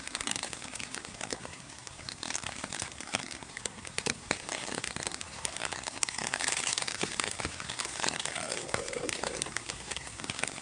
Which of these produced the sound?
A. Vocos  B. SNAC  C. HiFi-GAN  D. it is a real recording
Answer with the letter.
B